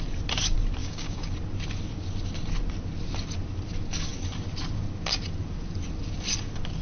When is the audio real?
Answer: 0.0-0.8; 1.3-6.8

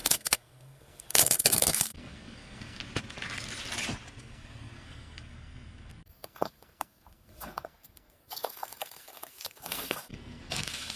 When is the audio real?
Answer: 2.8-4.2